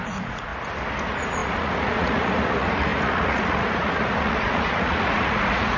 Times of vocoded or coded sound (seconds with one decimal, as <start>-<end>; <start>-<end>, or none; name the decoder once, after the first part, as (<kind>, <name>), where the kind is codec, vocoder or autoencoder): 0.0-0.5 (vocoder, Vocos); 1.0-5.8